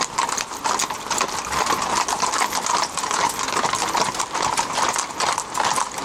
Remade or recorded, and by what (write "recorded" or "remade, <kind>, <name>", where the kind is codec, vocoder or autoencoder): recorded